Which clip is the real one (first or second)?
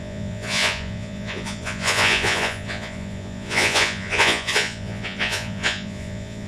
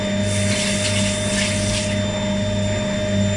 second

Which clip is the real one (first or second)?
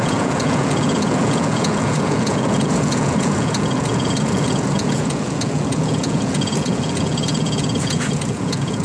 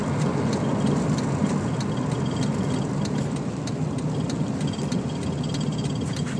second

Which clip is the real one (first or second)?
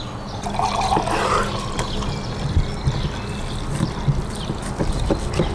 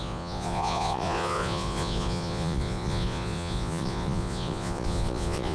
first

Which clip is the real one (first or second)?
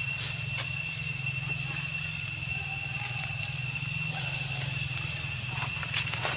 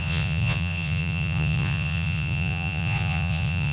first